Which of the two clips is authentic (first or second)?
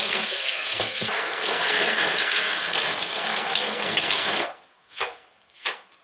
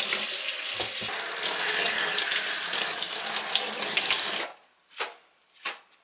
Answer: second